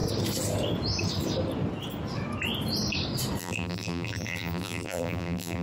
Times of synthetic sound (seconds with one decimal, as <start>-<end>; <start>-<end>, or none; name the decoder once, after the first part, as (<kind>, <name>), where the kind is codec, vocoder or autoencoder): 3.4-5.6 (vocoder, BigVGAN v2)